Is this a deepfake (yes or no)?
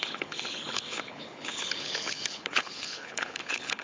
yes